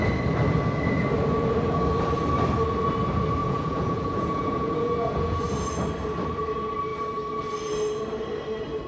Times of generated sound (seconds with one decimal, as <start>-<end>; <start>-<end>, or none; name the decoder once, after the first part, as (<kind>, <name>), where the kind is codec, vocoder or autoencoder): 3.4-5.4 (vocoder, Vocos)